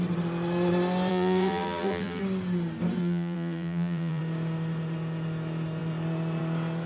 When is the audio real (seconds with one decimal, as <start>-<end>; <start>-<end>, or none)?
0.0-1.1; 2.2-3.0; 4.2-6.9